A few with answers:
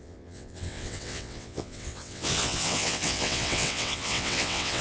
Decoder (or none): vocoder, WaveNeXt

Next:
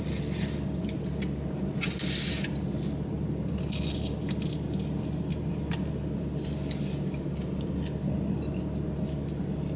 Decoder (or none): none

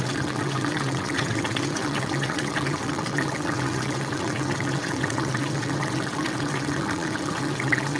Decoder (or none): vocoder, WaveNeXt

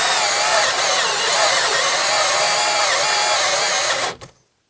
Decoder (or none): none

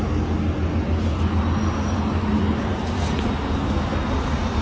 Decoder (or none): none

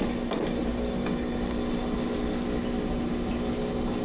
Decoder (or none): none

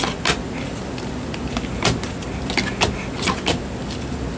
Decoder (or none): none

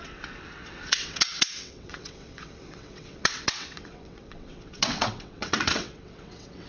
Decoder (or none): vocoder, WaveNeXt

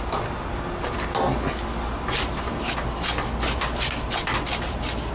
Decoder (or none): none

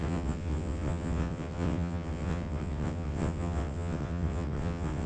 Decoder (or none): vocoder, WaveNeXt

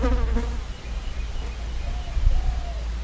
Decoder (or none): none